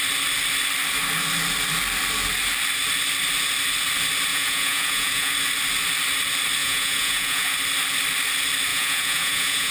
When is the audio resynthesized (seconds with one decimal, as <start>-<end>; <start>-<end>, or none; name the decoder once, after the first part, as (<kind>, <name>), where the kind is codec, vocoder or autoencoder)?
4.3-5.3 (vocoder, Vocos); 6.6-7.5; 8.7-9.7